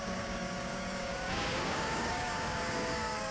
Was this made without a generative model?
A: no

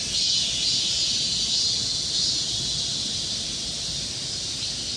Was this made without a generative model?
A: yes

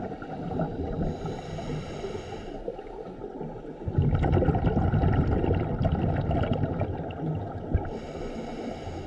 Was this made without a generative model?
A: yes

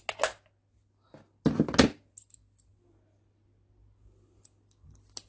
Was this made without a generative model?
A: yes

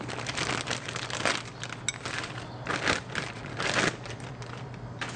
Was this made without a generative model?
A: yes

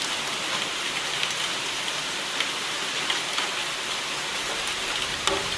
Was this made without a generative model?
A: yes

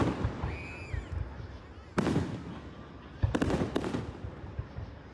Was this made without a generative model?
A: yes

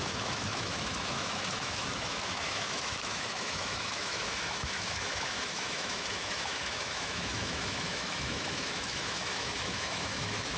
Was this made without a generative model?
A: no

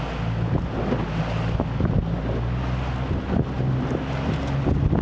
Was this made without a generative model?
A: yes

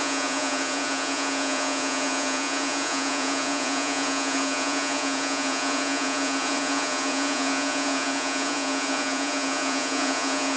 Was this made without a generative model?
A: no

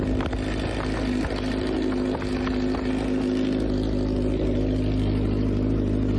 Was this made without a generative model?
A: yes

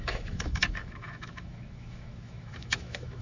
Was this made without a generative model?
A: no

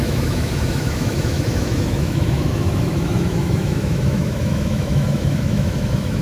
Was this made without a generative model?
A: no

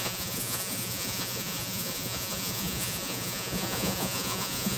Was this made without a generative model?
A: no